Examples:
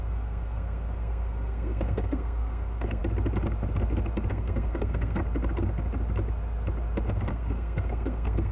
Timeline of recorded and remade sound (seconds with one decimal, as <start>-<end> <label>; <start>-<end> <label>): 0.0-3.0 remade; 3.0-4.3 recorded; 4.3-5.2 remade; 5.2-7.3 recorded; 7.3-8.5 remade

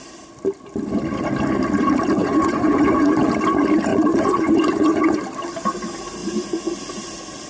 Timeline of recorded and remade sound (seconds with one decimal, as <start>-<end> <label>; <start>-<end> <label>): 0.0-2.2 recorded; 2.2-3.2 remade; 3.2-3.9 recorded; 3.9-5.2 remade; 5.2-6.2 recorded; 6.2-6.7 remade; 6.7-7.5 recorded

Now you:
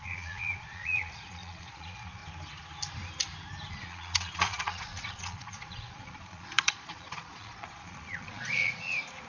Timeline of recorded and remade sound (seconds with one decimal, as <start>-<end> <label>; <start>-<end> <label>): 0.0-2.2 remade; 2.2-3.7 recorded; 3.7-8.7 remade; 8.7-9.3 recorded

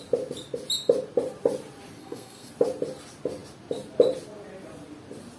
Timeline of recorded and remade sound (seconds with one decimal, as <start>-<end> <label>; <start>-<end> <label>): 0.0-2.0 recorded; 2.0-2.5 remade; 2.5-5.4 recorded

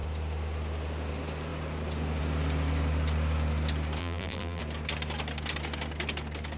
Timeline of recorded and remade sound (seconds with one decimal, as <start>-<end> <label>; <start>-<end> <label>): 0.0-4.0 recorded; 4.0-4.6 remade; 4.6-6.6 recorded

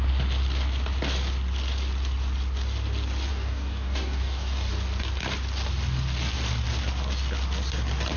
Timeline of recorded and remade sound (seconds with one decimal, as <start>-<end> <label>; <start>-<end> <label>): 0.0-3.3 recorded; 3.3-4.7 remade; 4.7-8.2 recorded

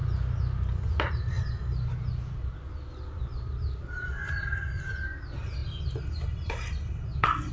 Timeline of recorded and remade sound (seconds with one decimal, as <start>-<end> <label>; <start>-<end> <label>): 0.0-7.5 recorded